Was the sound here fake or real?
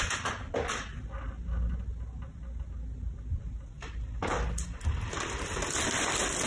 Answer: real